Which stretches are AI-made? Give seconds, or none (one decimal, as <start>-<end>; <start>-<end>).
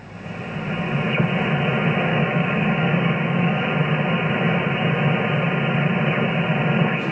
2.1-3.7